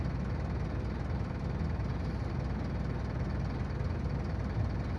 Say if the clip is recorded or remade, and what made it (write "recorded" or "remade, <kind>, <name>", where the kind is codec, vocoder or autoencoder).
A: remade, vocoder, BigVGAN v2